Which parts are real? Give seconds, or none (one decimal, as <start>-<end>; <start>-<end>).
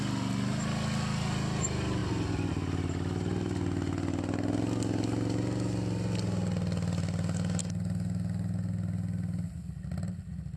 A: 0.0-10.6